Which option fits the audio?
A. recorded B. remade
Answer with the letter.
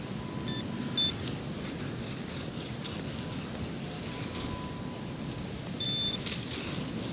A